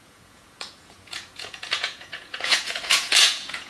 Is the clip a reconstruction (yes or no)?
yes